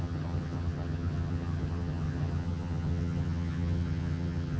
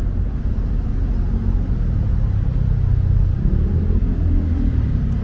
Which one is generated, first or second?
first